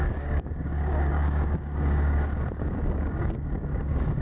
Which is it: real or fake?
fake